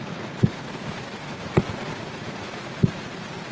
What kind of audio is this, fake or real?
fake